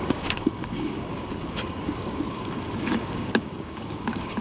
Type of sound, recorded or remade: remade